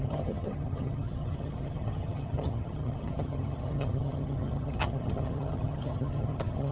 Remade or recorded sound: remade